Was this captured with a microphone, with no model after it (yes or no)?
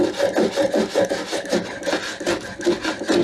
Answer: yes